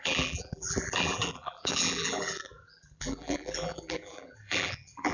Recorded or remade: remade